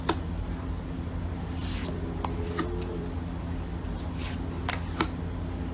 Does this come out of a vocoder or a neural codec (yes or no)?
no